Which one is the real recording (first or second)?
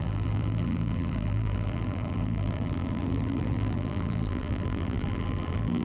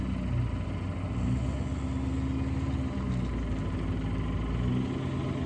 second